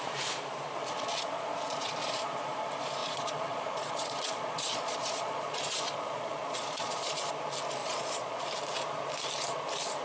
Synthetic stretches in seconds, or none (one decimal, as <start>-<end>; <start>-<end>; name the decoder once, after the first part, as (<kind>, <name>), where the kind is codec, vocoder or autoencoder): 1.1-2.3 (vocoder, Vocos); 3.0-7.3; 7.8-8.4